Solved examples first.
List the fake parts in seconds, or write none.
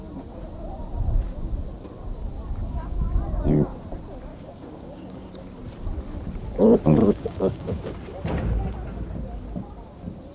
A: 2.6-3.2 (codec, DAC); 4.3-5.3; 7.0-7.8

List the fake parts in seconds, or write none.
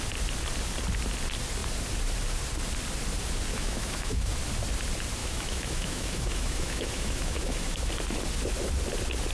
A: 3.5-4.3 (autoencoder, DAC-VAE); 5.2-7.9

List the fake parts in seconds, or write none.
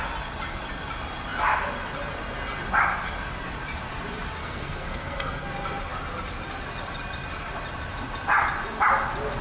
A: 4.4-5.5 (codec, SNAC)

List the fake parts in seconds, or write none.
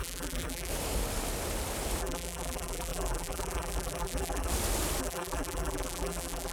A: 0.0-0.7 (vocoder, BigVGAN v2); 2.0-4.5; 5.0-6.5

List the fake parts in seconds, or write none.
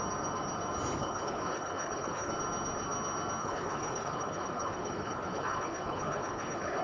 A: 1.0-2.3 (codec, HILCodec); 3.4-6.8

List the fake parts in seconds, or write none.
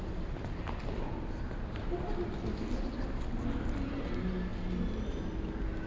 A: none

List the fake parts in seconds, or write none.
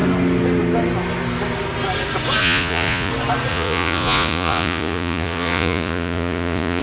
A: 2.4-3.1 (vocoder, Vocos); 3.5-6.8